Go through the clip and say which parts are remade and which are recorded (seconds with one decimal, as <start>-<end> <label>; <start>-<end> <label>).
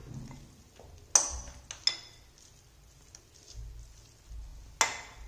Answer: 0.0-5.3 recorded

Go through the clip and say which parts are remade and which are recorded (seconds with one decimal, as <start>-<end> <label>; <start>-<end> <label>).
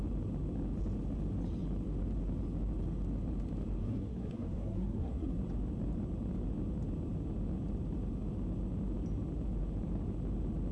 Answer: 0.0-3.8 recorded; 3.8-5.4 remade; 5.4-10.7 recorded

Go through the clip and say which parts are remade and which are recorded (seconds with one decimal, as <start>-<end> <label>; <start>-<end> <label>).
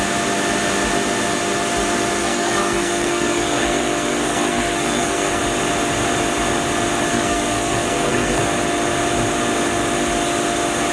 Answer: 0.0-2.2 recorded; 2.2-5.4 remade; 5.4-7.1 recorded; 7.1-8.4 remade; 8.4-10.9 recorded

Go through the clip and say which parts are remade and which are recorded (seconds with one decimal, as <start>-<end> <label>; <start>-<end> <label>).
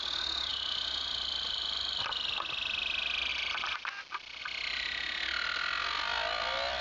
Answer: 0.0-6.8 recorded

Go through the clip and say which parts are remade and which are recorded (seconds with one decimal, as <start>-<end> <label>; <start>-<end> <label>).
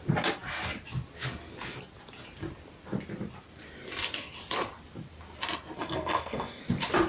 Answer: 0.0-5.8 recorded; 5.8-6.6 remade; 6.6-7.1 recorded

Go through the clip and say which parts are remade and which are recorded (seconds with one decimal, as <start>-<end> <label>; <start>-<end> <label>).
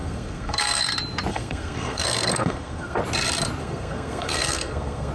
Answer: 0.0-0.8 remade; 0.8-1.3 recorded; 1.3-3.0 remade; 3.0-3.6 recorded; 3.6-5.1 remade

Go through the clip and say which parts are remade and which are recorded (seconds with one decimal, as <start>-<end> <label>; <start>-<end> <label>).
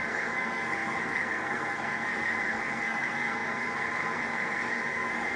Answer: 0.0-5.4 remade